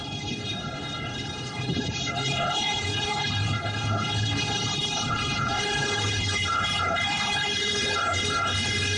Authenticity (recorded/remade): remade